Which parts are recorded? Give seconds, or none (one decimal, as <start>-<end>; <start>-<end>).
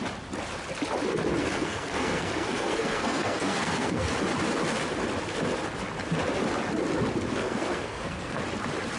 0.0-1.4; 4.1-7.4; 8.4-9.0